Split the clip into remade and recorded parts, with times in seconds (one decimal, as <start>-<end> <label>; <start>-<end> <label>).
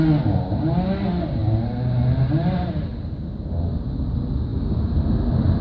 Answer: 0.0-1.4 recorded; 1.4-3.4 remade; 3.4-5.6 recorded